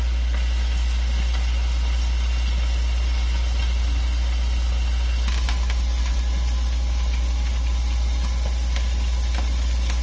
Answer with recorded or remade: recorded